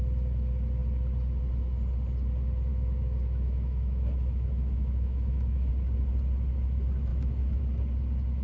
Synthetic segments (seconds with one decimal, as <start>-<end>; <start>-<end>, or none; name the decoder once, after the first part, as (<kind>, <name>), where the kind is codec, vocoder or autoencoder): 2.7-5.7 (autoencoder, DAC-VAE); 7.1-7.6

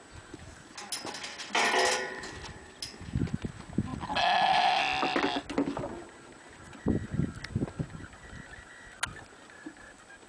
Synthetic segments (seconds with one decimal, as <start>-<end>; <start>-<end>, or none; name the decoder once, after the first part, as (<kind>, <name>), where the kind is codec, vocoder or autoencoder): none

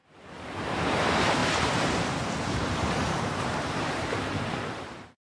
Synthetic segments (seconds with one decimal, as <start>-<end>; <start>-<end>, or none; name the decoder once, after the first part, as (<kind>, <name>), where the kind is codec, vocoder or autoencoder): 0.7-5.2 (vocoder, BigVGAN v2)

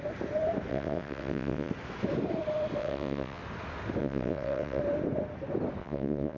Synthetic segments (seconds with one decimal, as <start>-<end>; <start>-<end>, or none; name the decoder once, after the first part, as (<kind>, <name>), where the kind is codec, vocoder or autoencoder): 0.7-1.7 (vocoder, WaveNeXt); 2.8-3.4; 4.0-4.8; 5.8-6.4